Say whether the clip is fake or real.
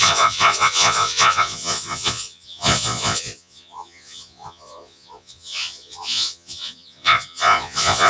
fake